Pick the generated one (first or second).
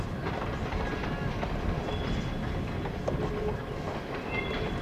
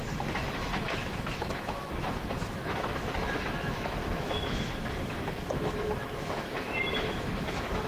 second